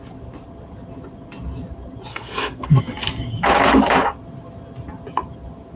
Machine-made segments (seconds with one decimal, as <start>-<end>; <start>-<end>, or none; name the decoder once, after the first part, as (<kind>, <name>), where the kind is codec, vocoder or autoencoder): 2.1-2.8 (codec, SNAC)